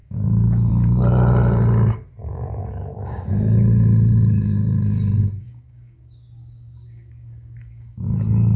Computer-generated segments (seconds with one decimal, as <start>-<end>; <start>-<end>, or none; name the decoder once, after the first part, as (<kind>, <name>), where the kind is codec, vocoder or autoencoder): 0.0-0.7 (codec, DAC); 2.2-3.3; 5.2-8.6